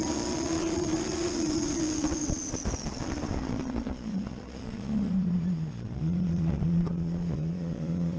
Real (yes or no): no